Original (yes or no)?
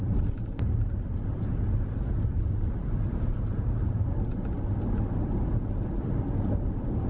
yes